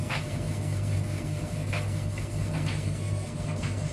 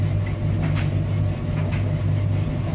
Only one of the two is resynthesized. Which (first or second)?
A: first